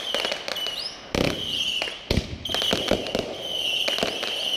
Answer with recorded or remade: recorded